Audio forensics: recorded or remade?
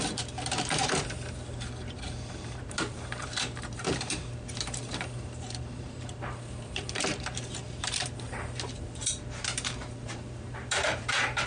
remade